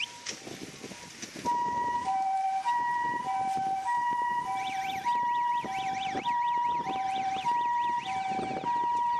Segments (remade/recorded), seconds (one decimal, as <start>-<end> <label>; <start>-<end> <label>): 0.0-9.2 recorded